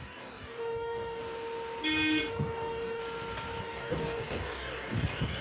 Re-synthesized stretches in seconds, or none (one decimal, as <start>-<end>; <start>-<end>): 0.0-1.2; 2.3-3.0; 3.6-5.4